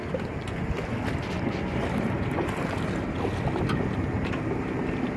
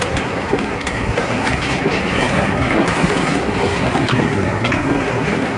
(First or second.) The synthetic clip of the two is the second